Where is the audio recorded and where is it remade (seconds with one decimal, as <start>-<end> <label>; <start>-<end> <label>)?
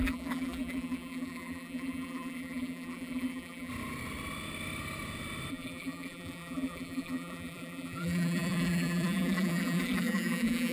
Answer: 0.0-3.7 remade; 3.7-5.5 recorded; 5.5-10.7 remade